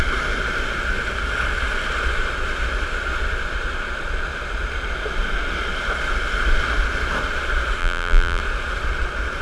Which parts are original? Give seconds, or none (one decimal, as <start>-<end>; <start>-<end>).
0.0-7.8; 8.4-9.4